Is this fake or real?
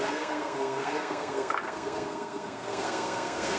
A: fake